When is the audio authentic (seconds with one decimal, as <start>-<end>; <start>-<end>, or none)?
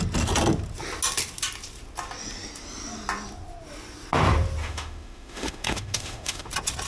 0.0-4.6; 6.5-6.9